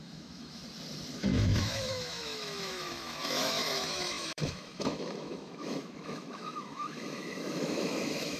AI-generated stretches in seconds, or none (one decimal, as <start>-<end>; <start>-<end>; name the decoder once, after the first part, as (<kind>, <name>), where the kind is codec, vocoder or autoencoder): 0.0-0.6 (autoencoder, DAC-VAE); 1.2-8.4